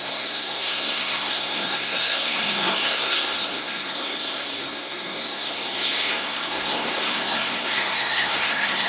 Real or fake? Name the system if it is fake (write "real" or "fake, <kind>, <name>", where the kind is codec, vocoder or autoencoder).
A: fake, codec, SNAC